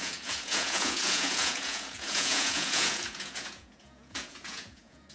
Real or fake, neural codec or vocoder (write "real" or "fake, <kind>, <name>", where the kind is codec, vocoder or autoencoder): fake, vocoder, Vocos